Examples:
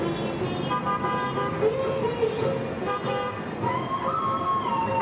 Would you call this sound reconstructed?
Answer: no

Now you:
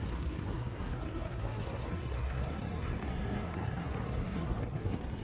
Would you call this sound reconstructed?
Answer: yes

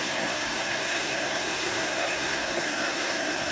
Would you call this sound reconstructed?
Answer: yes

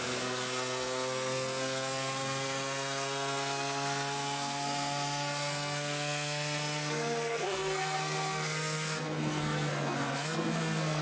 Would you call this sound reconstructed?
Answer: yes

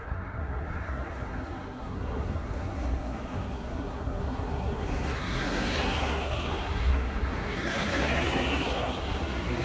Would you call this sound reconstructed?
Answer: yes